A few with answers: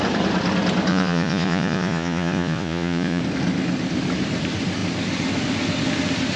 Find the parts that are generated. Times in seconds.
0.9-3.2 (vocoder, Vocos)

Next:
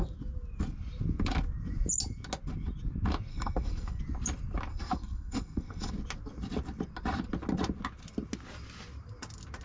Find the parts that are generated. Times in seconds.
3.3-4.0 (codec, SNAC); 4.7-5.9

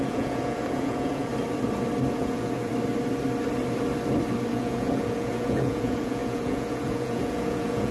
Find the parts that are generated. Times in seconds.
0.0-1.3 (vocoder, Vocos); 2.1-2.7; 4.5-7.9

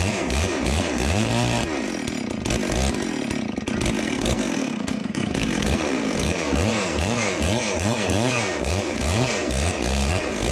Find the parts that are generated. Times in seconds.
0.0-1.3 (codec, SNAC); 4.0-10.5